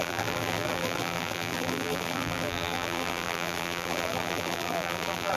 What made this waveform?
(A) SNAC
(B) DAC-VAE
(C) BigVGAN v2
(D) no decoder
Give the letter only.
C